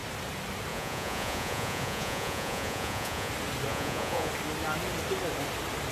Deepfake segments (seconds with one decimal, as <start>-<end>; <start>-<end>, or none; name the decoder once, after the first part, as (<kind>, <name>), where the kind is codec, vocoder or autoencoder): 0.7-3.3 (vocoder, Vocos); 3.7-4.3